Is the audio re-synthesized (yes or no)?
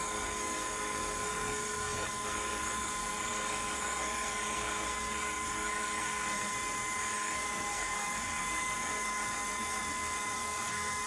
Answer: yes